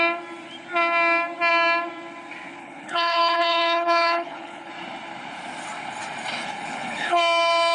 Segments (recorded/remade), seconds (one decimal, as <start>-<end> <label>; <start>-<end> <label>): 0.0-2.6 recorded; 2.6-4.7 remade; 4.7-6.4 recorded; 6.4-7.2 remade; 7.2-7.7 recorded